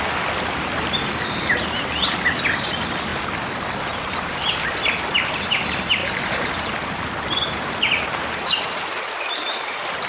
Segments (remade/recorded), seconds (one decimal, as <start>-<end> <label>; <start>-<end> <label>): 0.0-6.0 recorded; 6.0-6.5 remade; 6.5-10.1 recorded